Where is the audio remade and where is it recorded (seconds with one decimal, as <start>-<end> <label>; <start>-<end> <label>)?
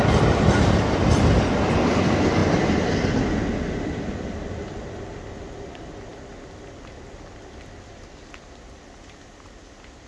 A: 0.0-10.1 recorded